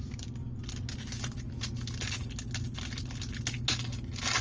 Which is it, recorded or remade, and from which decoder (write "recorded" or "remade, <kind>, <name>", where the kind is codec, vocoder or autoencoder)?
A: recorded